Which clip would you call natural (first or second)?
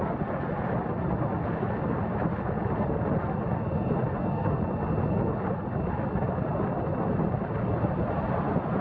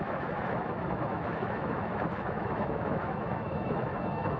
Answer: first